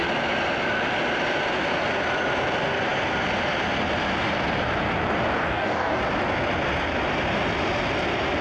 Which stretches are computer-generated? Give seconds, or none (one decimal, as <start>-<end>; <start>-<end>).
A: 5.4-6.0